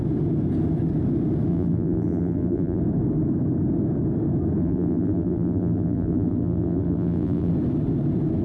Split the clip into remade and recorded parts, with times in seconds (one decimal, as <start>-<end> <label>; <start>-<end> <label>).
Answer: 0.0-1.5 recorded; 1.5-2.8 remade; 2.8-4.6 recorded; 4.6-7.5 remade; 7.5-8.4 recorded